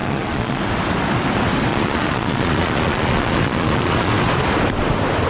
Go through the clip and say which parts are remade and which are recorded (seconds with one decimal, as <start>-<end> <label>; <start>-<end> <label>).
0.0-0.6 remade; 0.6-1.7 recorded; 1.7-4.1 remade; 4.1-5.3 recorded